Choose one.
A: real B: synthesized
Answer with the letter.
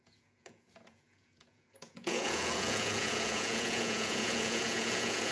B